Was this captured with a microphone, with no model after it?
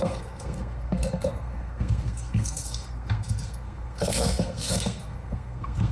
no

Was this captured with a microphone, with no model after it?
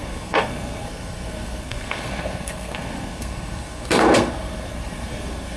no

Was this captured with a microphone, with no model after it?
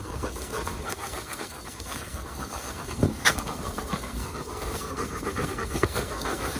no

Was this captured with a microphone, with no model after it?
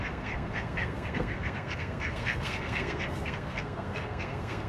no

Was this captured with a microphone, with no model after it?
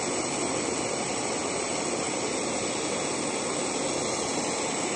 yes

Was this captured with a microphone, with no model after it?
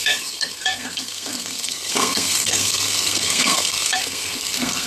no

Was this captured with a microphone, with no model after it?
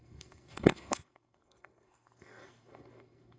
no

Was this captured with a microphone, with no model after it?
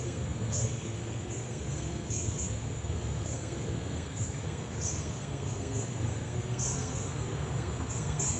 no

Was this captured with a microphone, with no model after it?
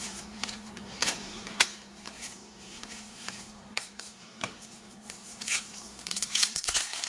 no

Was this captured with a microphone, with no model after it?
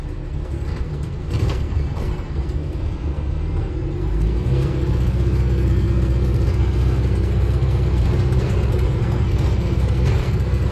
no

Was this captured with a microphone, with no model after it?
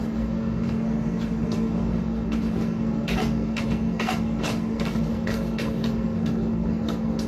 no